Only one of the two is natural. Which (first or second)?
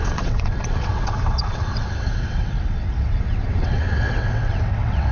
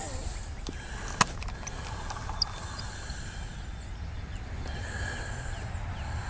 second